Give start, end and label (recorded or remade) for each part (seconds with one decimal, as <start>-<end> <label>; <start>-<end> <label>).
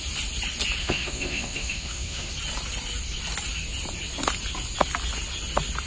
0.0-0.8 recorded; 0.8-2.3 remade; 2.3-5.9 recorded